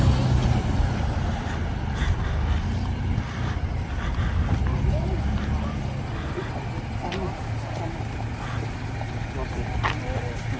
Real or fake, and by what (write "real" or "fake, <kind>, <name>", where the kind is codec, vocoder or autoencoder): real